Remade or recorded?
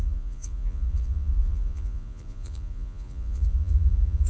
remade